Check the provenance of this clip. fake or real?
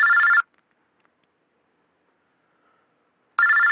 real